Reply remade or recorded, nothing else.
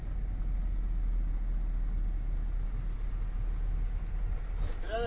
recorded